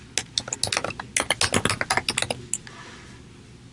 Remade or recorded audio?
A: recorded